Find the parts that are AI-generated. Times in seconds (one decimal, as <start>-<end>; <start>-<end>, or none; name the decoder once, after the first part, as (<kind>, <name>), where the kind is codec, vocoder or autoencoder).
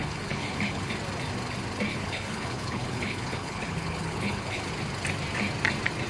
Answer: 0.0-0.9 (codec, HILCodec); 1.9-4.7